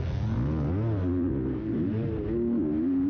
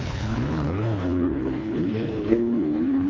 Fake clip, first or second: second